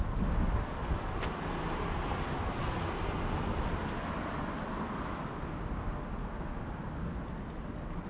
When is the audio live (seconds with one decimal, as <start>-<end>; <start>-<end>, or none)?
0.0-8.1